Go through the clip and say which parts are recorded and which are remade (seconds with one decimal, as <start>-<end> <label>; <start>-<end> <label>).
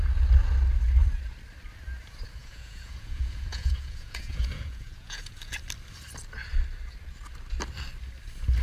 0.0-2.4 recorded; 2.4-5.5 remade; 5.5-8.6 recorded